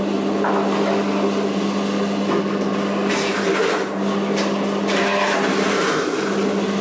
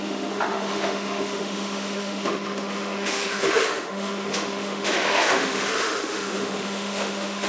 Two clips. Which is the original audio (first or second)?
first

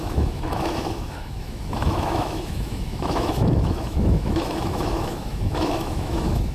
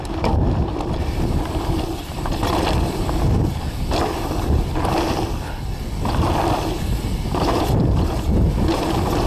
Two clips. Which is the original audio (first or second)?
second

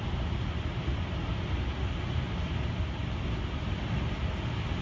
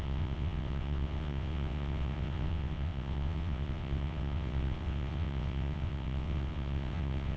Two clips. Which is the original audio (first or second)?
first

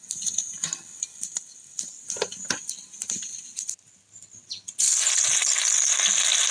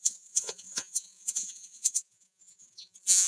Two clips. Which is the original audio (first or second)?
first